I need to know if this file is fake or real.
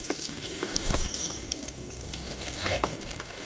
fake